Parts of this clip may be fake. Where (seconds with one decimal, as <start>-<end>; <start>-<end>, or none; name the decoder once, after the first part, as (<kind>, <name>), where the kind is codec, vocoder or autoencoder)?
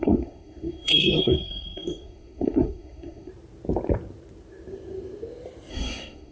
0.0-3.3 (codec, SNAC); 5.7-6.3